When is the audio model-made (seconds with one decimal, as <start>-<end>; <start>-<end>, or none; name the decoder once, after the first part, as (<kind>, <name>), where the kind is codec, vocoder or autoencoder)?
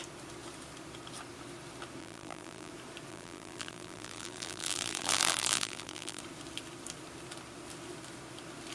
2.0-2.7 (vocoder, BigVGAN v2); 3.1-6.2